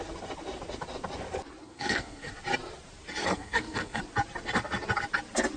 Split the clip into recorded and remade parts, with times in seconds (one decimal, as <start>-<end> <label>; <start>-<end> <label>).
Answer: 0.0-1.6 recorded; 1.6-2.3 remade; 2.3-3.2 recorded; 3.2-4.0 remade; 4.0-5.6 recorded